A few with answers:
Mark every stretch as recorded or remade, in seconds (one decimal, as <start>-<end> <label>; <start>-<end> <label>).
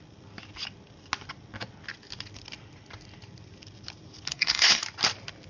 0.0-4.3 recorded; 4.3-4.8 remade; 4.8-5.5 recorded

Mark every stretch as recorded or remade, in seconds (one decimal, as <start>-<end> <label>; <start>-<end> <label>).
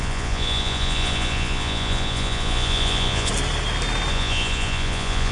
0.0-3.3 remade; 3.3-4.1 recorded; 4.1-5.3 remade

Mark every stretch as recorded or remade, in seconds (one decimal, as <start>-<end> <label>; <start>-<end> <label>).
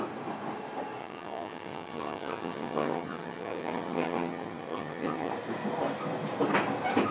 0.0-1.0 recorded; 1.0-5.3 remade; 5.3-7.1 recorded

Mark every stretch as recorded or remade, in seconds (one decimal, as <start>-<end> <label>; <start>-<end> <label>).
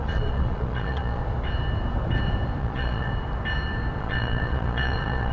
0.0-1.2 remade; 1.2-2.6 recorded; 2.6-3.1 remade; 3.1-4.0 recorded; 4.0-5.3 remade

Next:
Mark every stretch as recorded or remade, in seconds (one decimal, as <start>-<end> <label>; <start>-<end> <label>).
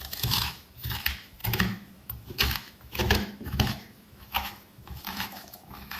0.0-6.0 remade